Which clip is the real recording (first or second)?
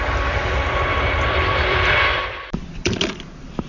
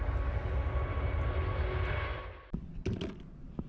second